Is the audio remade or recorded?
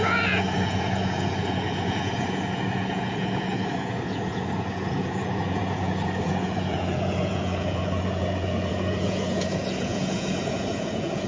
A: remade